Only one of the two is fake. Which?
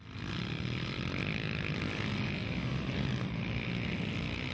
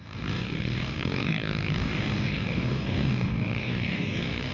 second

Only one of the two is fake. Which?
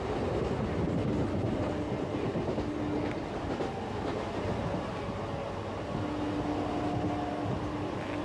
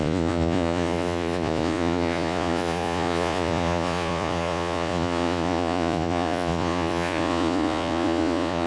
second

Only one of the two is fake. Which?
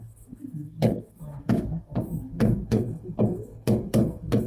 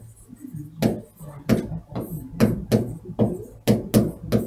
first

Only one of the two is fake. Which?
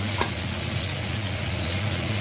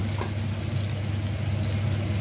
first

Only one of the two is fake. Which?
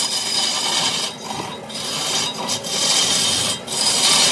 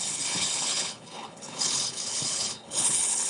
second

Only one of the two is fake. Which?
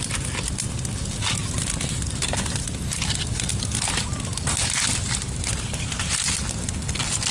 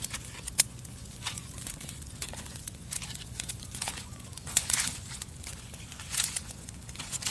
second